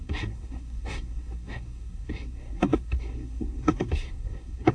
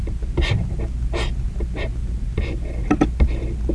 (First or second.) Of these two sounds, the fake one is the first